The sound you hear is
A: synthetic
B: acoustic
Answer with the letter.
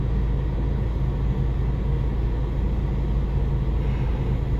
B